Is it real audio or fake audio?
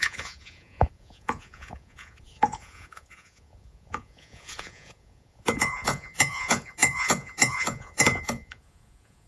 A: fake